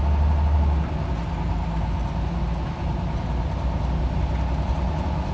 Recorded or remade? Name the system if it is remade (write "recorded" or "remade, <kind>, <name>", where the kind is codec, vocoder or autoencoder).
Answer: recorded